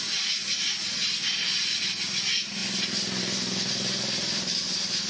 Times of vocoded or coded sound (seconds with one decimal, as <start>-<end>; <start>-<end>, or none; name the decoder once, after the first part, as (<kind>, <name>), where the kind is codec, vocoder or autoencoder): none